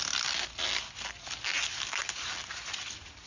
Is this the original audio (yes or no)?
yes